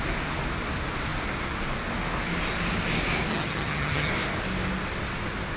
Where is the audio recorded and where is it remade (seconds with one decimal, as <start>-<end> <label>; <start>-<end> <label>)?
0.0-3.3 recorded; 3.3-4.1 remade; 4.1-5.6 recorded